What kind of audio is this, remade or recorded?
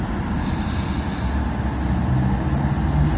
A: recorded